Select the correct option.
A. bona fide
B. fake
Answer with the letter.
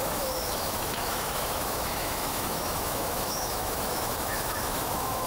B